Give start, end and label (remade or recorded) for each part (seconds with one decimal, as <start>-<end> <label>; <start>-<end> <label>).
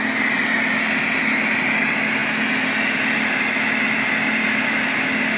0.0-5.4 recorded